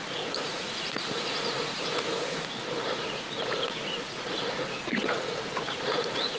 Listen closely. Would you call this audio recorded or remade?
remade